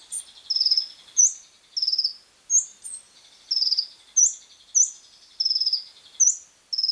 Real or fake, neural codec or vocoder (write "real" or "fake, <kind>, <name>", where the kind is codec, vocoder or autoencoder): real